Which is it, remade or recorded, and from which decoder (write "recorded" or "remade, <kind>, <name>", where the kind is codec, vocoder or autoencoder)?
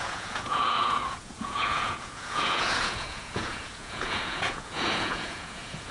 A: remade, vocoder, Vocos